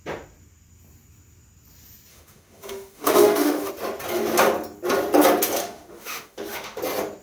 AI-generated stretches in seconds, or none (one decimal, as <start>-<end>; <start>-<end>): 2.1-3.7; 5.6-6.8